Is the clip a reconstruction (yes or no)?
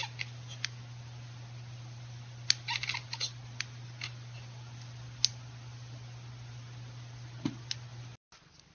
no